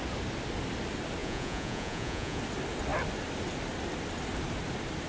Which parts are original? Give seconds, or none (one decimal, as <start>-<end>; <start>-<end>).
0.0-1.2; 2.4-5.1

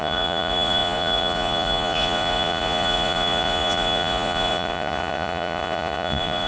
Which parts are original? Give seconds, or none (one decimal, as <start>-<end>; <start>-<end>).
none

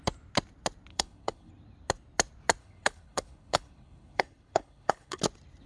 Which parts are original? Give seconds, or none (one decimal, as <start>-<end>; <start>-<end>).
0.0-0.9; 1.5-2.6; 5.2-5.7

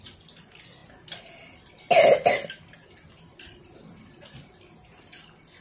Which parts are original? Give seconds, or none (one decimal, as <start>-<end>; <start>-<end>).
0.0-5.6

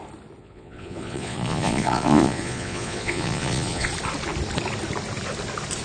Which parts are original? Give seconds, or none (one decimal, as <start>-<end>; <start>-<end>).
0.0-0.4; 3.9-5.8

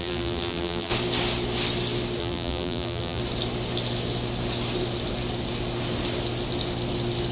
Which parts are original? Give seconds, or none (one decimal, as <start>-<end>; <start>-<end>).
0.9-2.2; 3.2-7.3